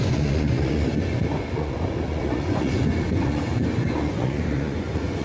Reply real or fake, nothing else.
fake